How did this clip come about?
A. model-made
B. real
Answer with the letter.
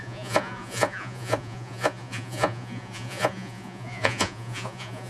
A